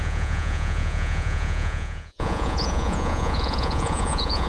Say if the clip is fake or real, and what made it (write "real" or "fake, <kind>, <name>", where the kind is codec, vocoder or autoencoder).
fake, vocoder, Vocos